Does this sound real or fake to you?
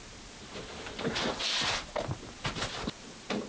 real